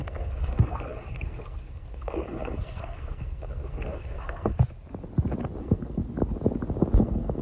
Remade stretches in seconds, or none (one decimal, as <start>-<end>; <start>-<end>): 0.0-4.5; 5.6-6.0; 7.0-7.4